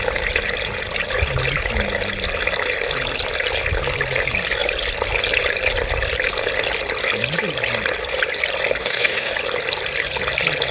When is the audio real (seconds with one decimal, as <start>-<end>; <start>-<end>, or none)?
0.0-8.8; 9.3-10.7